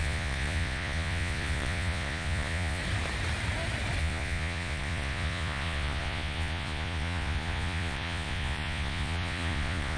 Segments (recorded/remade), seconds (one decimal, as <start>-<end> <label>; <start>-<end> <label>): 0.0-2.8 remade; 2.8-4.0 recorded; 4.0-10.0 remade